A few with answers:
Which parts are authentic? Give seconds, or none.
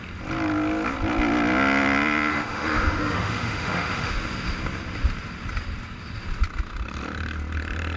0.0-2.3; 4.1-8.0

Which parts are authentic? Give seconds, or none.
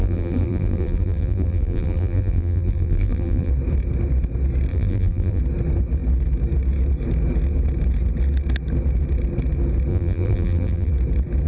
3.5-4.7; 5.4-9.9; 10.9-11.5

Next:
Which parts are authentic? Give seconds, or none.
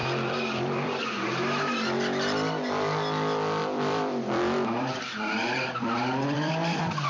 1.0-3.6; 6.5-7.1